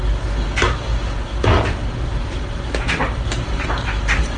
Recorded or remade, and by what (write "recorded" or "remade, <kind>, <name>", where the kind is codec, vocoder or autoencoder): recorded